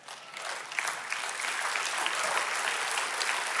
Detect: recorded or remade recorded